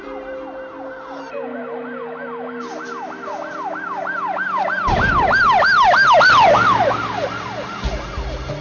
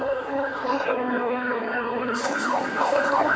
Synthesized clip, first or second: second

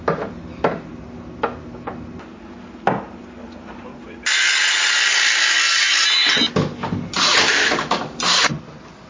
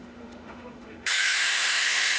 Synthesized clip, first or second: second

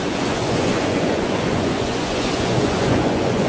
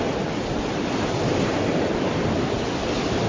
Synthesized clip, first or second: first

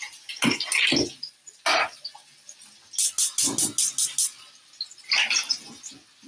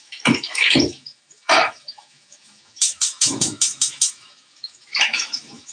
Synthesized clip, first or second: second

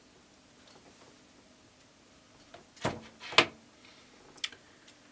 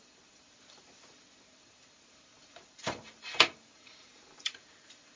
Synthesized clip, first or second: second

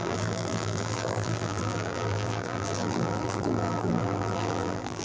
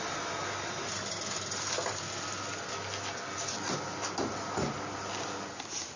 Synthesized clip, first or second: first